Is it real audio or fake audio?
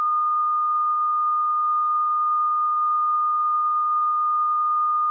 fake